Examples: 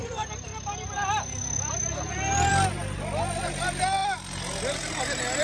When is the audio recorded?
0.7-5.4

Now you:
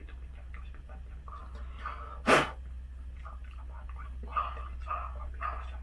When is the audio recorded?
0.0-5.8

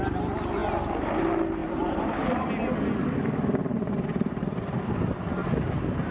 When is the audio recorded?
0.0-1.6; 2.5-3.6; 4.5-5.4

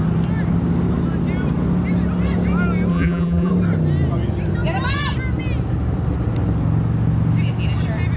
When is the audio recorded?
0.0-2.9; 3.5-8.2

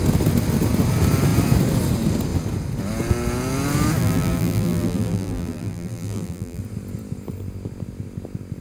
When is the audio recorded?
0.0-4.0; 6.6-8.6

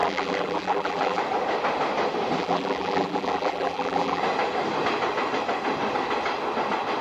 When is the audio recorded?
1.2-2.4; 4.2-7.0

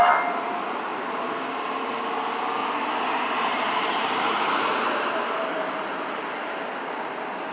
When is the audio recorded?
0.0-2.6; 6.5-7.5